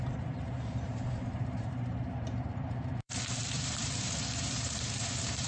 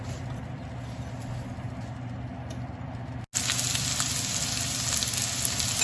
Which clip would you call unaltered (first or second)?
second